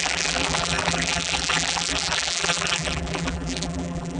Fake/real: fake